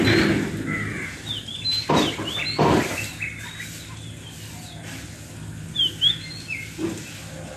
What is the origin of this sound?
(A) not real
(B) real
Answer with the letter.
B